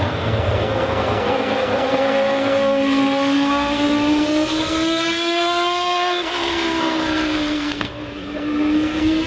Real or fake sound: fake